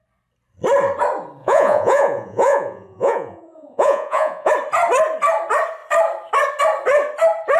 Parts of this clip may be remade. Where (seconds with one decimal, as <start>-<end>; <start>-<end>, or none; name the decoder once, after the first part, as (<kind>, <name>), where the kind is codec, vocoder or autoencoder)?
1.4-4.5 (vocoder, Vocos)